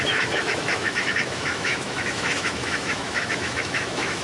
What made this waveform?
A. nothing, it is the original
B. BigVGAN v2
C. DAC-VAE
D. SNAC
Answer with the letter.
C